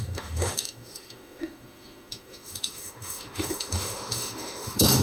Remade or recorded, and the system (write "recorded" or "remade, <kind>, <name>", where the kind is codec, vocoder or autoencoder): remade, autoencoder, DAC-VAE